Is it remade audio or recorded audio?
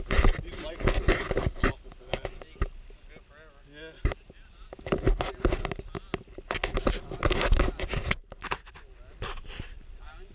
recorded